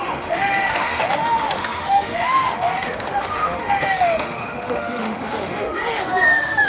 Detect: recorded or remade remade